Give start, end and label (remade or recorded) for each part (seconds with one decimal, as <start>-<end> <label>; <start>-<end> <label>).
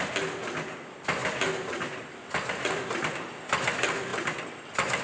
0.0-5.0 recorded